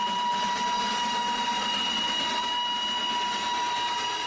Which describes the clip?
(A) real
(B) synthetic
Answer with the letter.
A